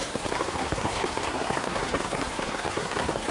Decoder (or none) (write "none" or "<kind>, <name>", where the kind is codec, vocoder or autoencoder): codec, SNAC